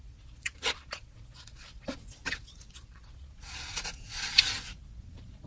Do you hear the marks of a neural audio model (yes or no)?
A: yes